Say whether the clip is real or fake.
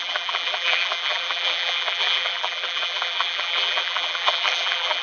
fake